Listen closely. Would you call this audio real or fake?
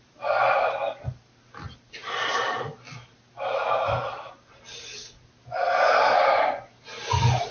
real